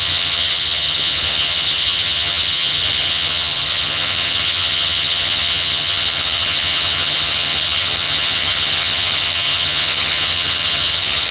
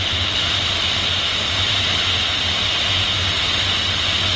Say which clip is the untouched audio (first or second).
second